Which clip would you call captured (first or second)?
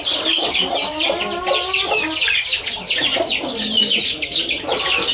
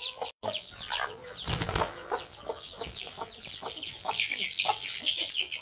first